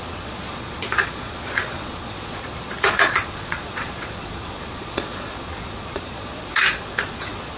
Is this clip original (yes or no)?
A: no